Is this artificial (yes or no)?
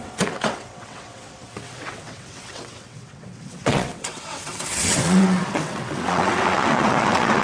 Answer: yes